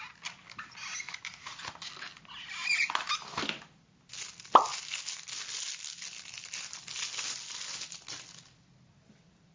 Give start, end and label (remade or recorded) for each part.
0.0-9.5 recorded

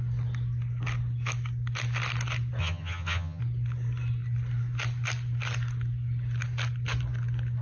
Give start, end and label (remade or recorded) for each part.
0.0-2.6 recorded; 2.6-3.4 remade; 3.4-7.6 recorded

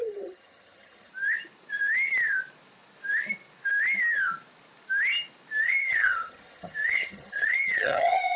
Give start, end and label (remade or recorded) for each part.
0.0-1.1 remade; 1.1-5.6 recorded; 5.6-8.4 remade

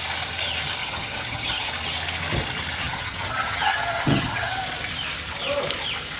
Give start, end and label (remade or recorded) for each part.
0.0-0.8 recorded; 0.8-1.7 remade; 1.7-2.8 recorded; 2.8-4.6 remade; 4.6-6.2 recorded